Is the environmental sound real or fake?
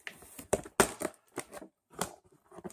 real